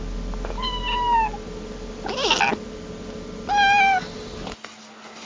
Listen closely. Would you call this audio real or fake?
real